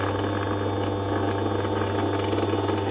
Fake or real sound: real